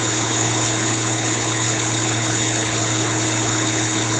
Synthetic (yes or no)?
yes